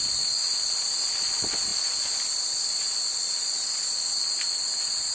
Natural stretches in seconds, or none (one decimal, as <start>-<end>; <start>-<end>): 0.0-5.1